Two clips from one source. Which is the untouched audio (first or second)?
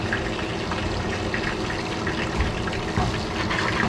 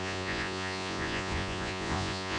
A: first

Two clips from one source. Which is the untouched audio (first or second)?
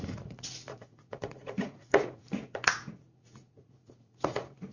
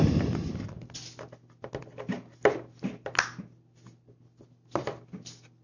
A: second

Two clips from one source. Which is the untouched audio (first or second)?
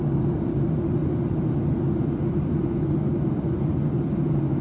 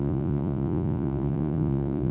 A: first